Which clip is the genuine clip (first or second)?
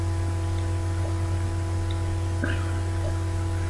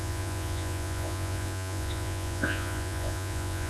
first